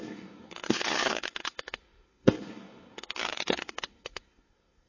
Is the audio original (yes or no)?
no